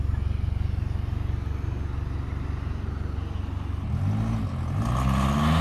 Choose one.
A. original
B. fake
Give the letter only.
A